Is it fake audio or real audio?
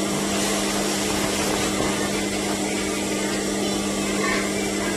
real